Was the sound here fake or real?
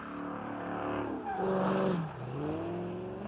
real